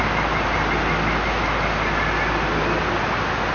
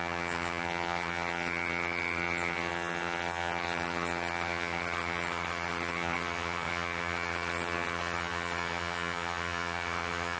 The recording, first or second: first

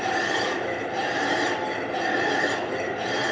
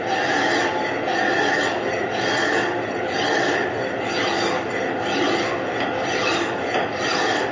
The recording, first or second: second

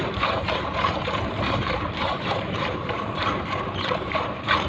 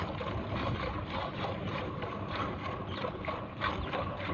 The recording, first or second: second